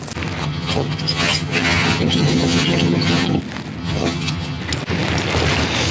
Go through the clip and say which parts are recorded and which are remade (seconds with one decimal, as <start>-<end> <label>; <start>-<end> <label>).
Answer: 0.0-0.4 recorded; 0.4-3.4 remade; 3.4-3.8 recorded; 3.8-4.6 remade; 4.6-5.9 recorded